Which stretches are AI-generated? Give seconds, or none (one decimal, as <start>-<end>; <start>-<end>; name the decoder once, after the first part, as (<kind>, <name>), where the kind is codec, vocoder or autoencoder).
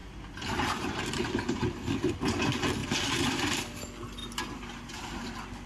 0.0-1.4 (vocoder, BigVGAN v2); 2.8-3.8